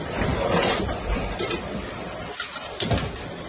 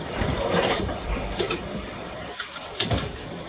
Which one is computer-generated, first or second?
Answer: second